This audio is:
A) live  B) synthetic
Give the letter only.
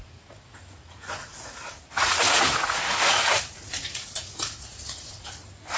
B